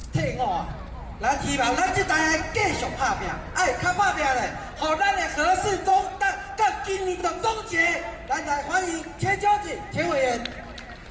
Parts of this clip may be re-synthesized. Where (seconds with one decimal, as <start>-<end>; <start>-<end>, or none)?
none